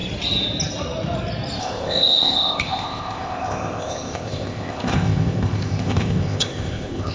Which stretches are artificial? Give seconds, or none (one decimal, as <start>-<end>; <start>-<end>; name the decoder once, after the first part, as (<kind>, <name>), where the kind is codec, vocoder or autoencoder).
1.6-7.1 (codec, ZipCodec)